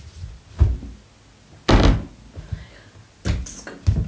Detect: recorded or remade recorded